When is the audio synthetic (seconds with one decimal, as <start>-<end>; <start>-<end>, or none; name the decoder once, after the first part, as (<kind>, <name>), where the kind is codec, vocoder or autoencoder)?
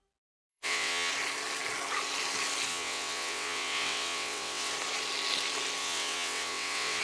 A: 0.5-1.1 (vocoder, WaveNeXt); 2.7-4.7; 5.8-7.0